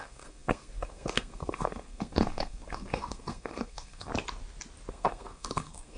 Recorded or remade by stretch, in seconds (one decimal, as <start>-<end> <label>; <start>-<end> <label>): 0.0-4.1 remade; 4.1-4.9 recorded; 4.9-6.0 remade